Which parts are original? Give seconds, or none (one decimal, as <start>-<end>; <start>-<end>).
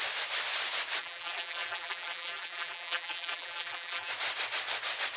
0.0-1.0; 4.1-5.2